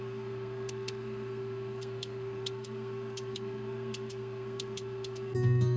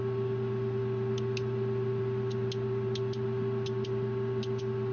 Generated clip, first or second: first